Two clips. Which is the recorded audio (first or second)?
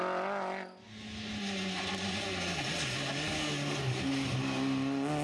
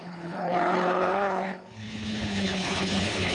first